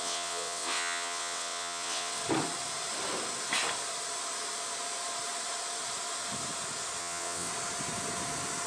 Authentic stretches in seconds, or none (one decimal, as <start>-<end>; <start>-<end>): 2.2-7.0; 7.5-8.7